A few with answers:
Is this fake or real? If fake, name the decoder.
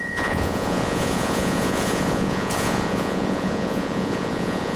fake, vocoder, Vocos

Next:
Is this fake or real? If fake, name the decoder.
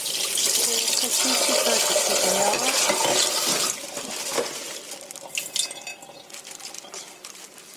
real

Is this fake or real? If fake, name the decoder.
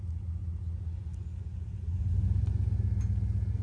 real